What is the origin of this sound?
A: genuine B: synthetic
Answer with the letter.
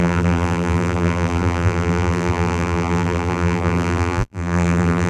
B